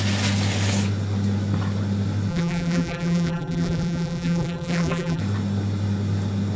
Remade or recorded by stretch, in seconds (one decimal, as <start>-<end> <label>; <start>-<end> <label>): 0.0-2.3 recorded; 2.3-5.2 remade; 5.2-6.6 recorded